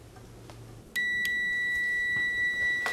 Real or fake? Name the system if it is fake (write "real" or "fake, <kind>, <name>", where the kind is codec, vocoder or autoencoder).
real